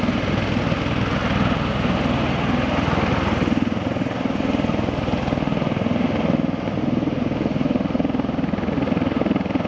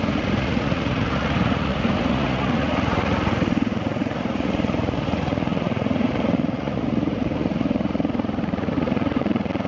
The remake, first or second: second